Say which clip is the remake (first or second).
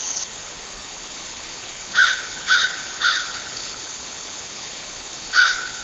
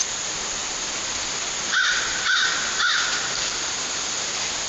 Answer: first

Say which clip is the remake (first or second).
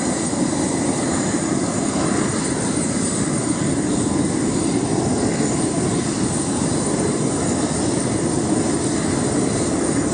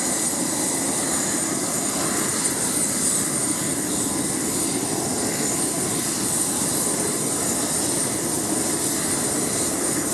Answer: first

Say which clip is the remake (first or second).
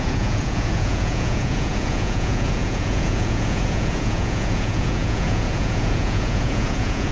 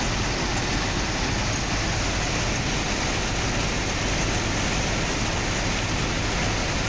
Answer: first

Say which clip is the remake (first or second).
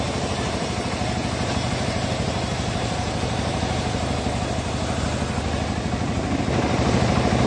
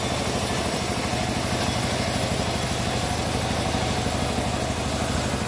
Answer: first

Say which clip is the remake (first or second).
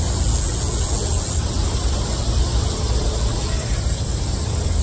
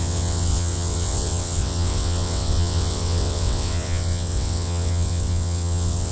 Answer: second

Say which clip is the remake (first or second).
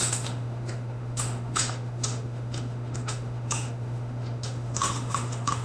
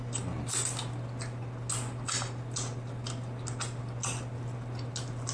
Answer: first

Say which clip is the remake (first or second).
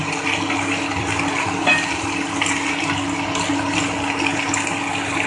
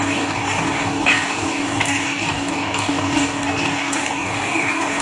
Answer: second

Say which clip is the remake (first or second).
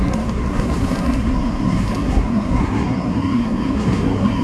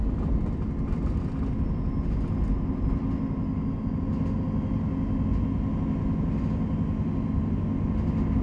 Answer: first